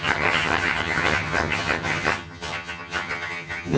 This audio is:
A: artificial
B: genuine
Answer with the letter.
A